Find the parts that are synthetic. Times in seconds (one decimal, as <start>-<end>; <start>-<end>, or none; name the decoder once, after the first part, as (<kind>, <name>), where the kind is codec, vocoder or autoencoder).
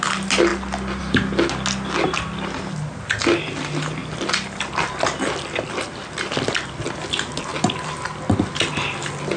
none